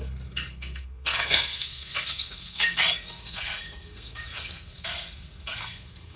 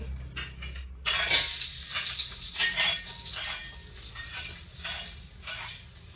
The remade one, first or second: first